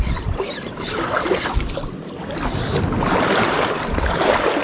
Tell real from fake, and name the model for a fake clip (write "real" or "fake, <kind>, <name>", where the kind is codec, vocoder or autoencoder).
real